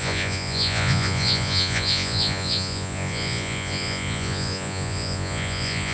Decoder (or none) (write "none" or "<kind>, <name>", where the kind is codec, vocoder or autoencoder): vocoder, Vocos